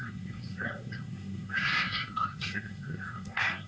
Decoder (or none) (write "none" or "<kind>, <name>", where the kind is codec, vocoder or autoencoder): codec, SNAC